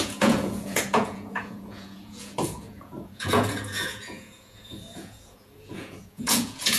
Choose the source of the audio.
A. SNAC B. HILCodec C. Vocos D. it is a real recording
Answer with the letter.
C